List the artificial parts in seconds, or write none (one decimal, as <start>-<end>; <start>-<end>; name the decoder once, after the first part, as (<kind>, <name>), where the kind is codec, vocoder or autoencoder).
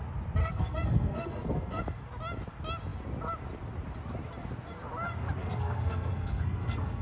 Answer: 0.4-1.8 (codec, SNAC); 5.4-7.0